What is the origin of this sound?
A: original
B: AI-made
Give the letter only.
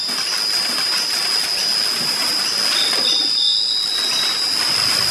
A